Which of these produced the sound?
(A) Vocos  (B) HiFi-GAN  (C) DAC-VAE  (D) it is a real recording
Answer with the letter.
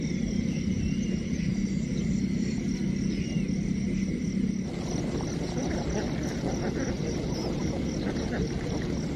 D